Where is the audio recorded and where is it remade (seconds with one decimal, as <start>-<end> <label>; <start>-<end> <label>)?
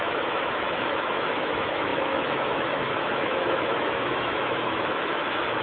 0.0-5.6 remade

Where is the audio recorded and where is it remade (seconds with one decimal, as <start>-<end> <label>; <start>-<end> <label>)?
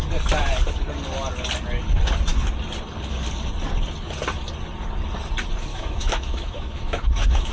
0.0-5.7 recorded; 5.7-7.5 remade